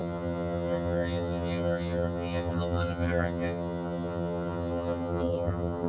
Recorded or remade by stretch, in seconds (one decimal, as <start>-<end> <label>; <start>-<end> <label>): 0.0-5.9 remade